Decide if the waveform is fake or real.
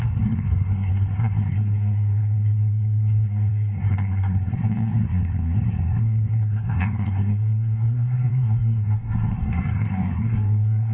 fake